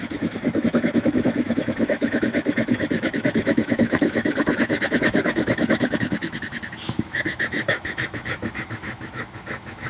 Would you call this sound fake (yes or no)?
yes